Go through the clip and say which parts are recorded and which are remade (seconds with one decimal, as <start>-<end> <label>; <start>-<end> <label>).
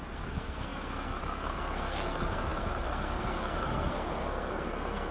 0.0-5.1 remade